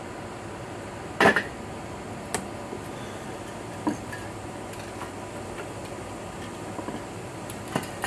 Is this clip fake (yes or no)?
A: no